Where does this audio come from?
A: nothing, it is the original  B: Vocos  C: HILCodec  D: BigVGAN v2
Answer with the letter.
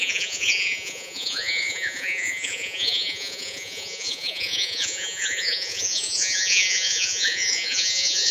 B